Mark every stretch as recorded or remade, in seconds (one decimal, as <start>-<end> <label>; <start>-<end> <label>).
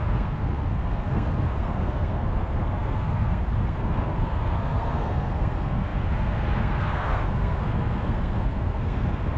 0.0-9.4 remade